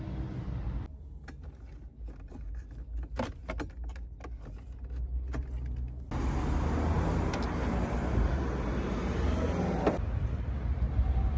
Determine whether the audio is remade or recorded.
recorded